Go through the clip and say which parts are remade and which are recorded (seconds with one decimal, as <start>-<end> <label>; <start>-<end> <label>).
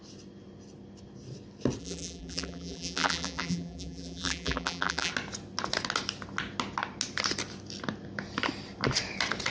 0.0-1.8 recorded; 1.8-5.1 remade; 5.1-9.5 recorded